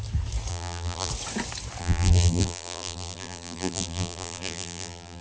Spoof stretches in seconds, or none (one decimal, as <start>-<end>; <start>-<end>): 0.5-1.1; 1.8-5.2